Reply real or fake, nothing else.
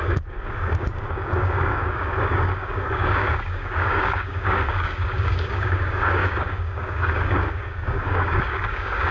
fake